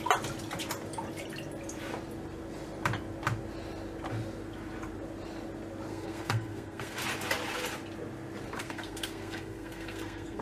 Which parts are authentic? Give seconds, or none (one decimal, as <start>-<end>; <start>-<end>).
0.0-5.9; 7.0-8.6